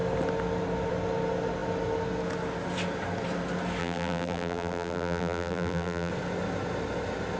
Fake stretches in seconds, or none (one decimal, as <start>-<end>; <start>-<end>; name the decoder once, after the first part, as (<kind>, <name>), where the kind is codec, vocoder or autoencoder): 3.8-6.1 (vocoder, BigVGAN v2)